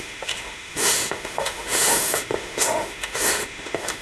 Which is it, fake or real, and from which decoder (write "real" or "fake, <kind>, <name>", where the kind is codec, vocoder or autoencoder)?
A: fake, autoencoder, DAC-VAE